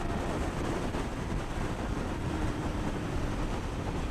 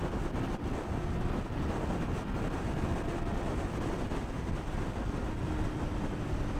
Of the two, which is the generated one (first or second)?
first